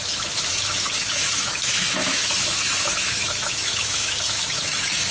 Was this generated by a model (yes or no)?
yes